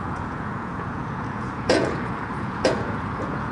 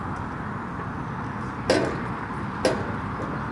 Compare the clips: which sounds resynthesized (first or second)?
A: first